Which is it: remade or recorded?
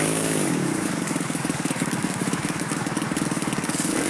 remade